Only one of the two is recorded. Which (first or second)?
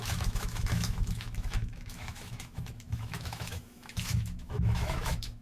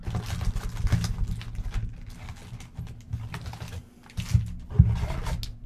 second